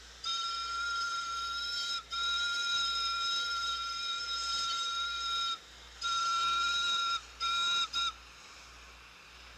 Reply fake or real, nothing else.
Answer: real